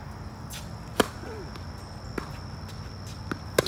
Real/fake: real